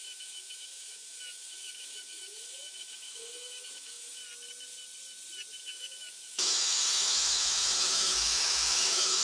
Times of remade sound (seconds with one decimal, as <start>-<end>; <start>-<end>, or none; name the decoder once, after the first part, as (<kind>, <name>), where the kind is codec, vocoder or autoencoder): 0.0-4.2 (autoencoder, DAC-VAE); 5.6-9.2